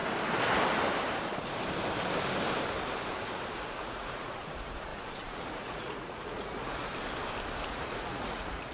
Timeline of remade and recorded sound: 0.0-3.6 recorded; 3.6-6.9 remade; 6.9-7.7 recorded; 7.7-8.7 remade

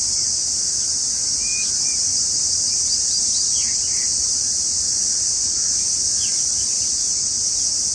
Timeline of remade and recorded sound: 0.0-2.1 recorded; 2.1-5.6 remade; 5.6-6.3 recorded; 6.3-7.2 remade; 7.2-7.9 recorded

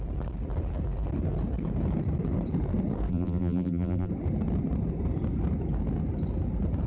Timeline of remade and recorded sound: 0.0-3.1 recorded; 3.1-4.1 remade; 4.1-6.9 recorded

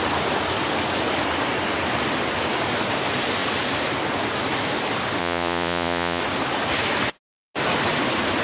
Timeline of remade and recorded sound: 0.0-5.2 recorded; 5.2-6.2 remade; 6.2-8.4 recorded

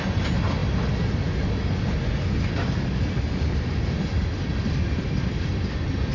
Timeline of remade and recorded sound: 0.0-6.1 recorded

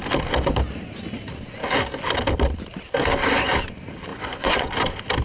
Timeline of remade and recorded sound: 0.0-4.1 recorded; 4.1-4.7 remade; 4.7-5.2 recorded

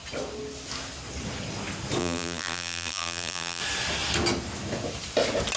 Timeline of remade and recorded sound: 0.0-2.0 recorded; 2.0-3.6 remade; 3.6-5.6 recorded